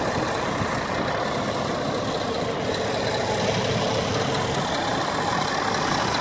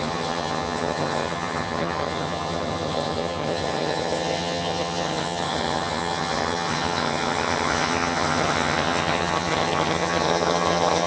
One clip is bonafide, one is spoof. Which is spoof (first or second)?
second